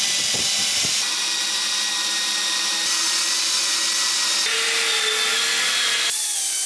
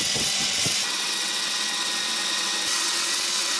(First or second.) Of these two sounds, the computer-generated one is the second